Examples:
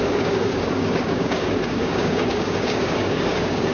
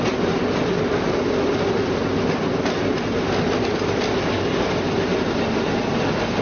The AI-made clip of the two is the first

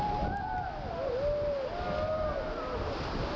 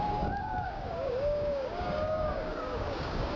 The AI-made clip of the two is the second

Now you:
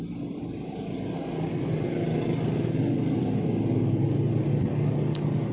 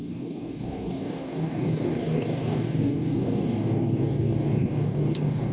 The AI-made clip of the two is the second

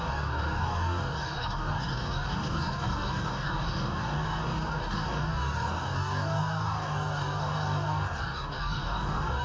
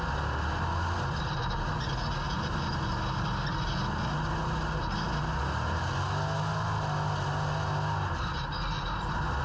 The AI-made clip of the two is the first